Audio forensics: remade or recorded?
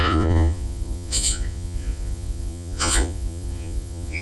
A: remade